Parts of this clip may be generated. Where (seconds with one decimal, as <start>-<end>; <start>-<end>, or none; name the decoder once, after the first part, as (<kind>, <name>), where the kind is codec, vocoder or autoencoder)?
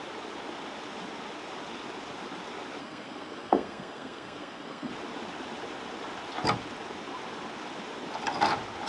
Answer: 2.8-4.9 (codec, SNAC)